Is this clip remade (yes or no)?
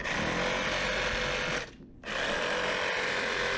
no